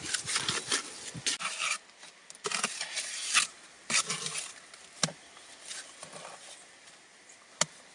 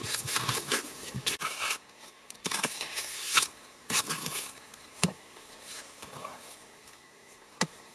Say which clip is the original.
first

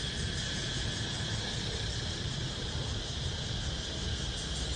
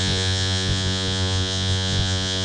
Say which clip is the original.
first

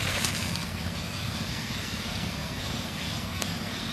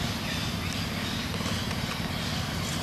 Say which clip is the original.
second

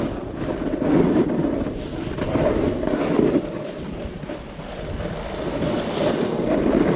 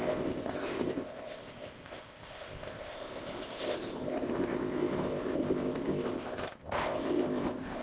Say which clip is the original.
first